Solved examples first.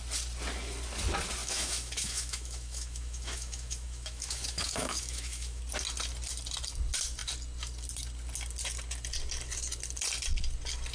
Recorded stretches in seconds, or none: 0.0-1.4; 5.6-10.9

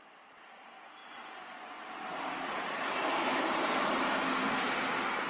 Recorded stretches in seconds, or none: 0.0-1.0; 1.8-5.3

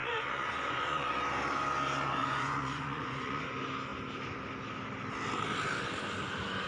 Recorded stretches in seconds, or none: 1.2-2.2; 3.4-6.7

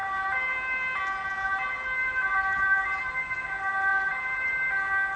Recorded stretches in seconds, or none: 3.1-3.9; 4.5-5.2